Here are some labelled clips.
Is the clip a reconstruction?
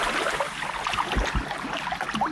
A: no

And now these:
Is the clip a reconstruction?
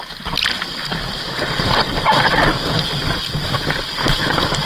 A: no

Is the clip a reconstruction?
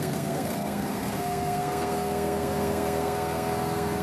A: yes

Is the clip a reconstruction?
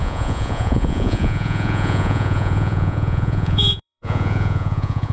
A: yes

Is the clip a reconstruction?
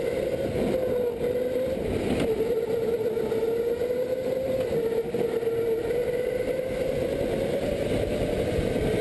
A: no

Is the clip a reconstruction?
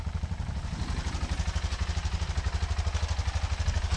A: no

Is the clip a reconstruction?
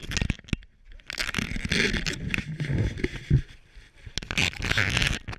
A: no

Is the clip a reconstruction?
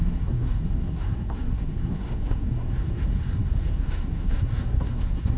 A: yes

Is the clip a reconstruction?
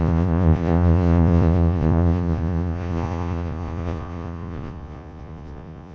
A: yes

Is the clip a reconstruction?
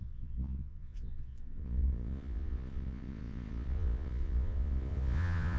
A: yes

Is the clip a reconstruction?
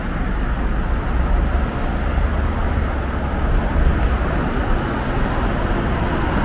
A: no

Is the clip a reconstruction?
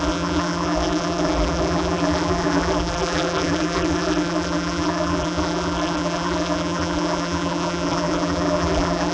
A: yes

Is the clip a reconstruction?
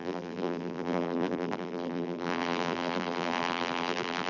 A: yes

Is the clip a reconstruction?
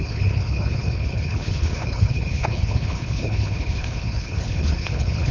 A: yes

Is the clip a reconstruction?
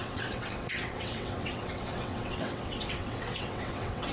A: yes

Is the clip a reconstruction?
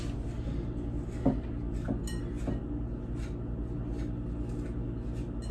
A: no